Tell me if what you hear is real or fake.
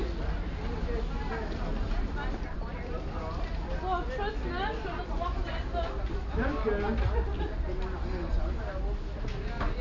real